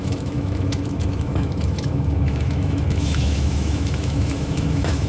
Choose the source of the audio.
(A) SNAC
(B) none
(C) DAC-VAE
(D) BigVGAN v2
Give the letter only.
C